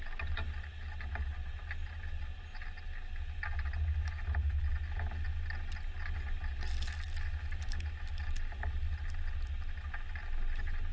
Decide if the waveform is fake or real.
real